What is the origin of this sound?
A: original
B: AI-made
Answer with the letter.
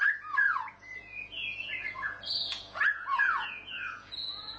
B